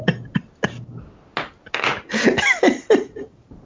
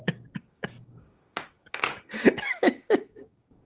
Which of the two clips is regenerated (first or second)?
second